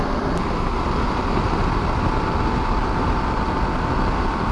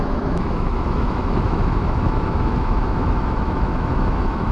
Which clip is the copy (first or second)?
second